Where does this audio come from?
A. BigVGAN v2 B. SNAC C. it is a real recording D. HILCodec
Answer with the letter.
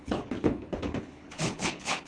D